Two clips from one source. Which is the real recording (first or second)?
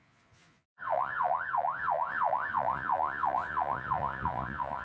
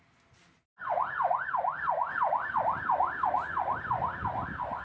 second